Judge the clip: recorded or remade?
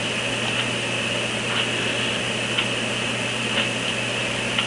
recorded